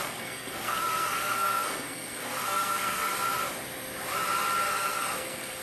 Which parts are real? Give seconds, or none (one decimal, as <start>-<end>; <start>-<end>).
3.1-4.7